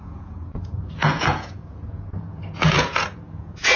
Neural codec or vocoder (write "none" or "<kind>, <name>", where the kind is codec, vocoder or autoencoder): vocoder, Vocos